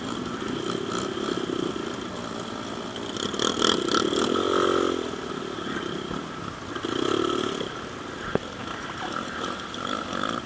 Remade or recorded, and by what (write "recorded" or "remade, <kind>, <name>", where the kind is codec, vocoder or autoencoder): recorded